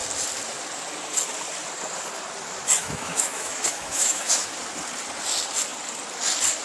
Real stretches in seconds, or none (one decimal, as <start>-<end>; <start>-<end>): 0.0-2.8; 4.5-6.6